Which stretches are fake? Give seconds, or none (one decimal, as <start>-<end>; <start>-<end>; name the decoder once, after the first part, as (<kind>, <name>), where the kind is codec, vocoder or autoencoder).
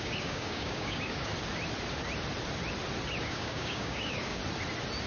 0.0-1.3 (codec, DAC); 3.2-4.4